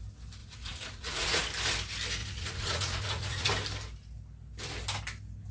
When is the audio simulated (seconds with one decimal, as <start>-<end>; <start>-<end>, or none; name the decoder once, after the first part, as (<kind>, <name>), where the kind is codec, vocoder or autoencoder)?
0.4-1.4 (vocoder, Vocos); 2.2-3.5